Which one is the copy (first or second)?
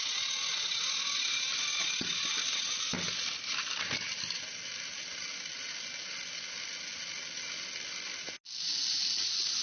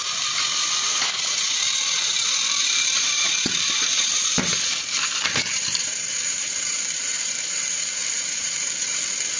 second